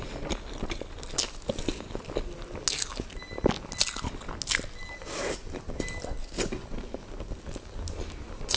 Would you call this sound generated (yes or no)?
no